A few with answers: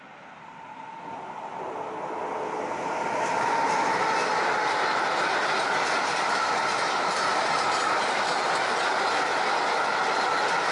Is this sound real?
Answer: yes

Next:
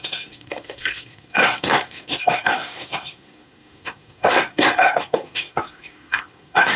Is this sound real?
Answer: no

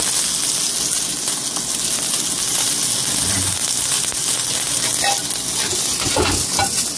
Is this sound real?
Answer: yes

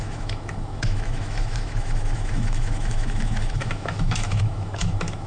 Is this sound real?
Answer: no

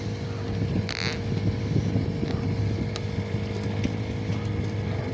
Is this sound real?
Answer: yes